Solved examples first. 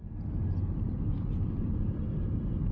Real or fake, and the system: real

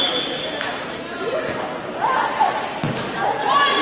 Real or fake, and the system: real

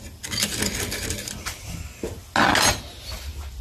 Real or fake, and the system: real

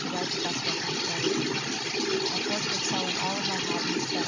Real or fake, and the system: real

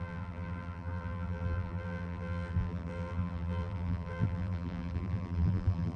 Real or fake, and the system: fake, vocoder, BigVGAN v2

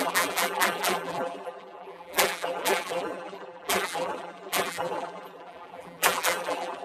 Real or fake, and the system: fake, vocoder, BigVGAN v2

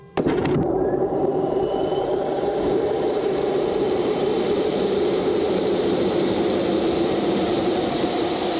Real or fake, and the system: fake, vocoder, BigVGAN v2